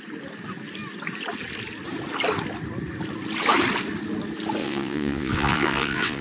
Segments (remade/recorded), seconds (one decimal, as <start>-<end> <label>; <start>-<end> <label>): 0.0-4.6 recorded; 4.6-6.2 remade